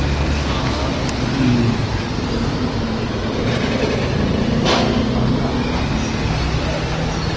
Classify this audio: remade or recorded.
recorded